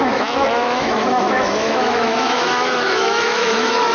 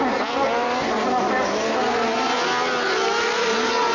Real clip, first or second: second